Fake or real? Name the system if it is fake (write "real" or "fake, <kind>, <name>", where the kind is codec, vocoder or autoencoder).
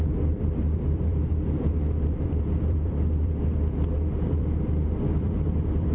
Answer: fake, vocoder, BigVGAN v2